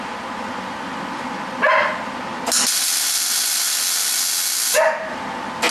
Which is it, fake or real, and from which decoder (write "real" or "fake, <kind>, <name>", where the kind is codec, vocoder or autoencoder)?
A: real